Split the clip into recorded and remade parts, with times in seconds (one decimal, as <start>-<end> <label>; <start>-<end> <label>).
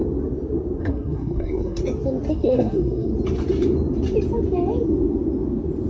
0.0-0.8 recorded; 0.8-1.8 remade; 1.8-2.3 recorded; 2.3-3.1 remade; 3.1-5.9 recorded